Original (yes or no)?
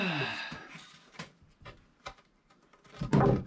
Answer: yes